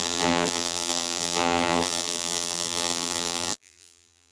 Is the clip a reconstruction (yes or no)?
yes